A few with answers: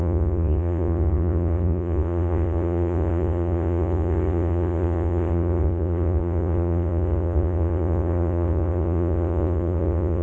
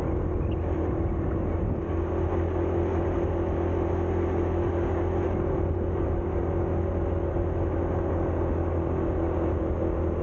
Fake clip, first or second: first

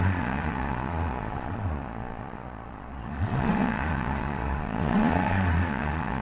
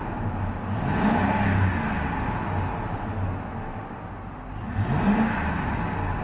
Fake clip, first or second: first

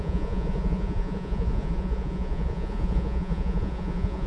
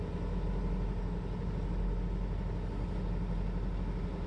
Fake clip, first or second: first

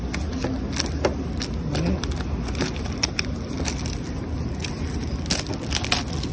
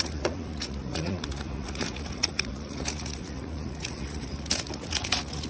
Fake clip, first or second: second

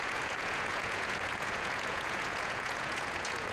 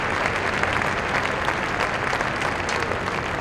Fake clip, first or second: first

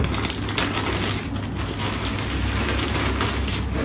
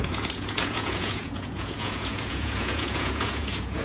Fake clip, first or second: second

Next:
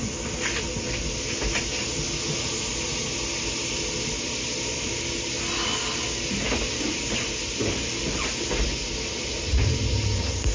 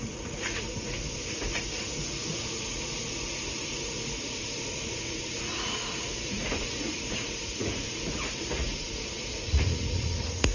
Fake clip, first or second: second